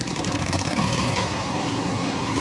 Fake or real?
fake